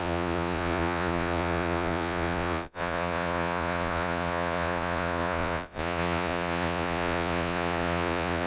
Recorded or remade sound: remade